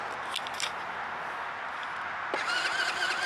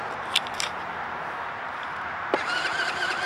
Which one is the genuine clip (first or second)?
first